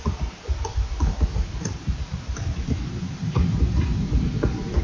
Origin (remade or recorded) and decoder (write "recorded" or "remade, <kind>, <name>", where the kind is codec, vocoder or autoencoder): remade, vocoder, BigVGAN v2